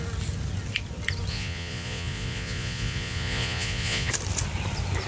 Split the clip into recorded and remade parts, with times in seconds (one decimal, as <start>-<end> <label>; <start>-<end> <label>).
0.0-1.3 recorded; 1.3-4.1 remade; 4.1-5.1 recorded